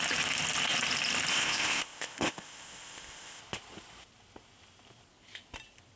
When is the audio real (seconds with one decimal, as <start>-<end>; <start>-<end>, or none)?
0.0-1.3; 3.4-6.0